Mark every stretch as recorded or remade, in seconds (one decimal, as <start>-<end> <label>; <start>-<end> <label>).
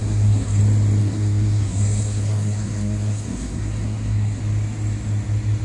0.0-0.6 remade; 0.6-1.0 recorded; 1.0-4.4 remade; 4.4-5.6 recorded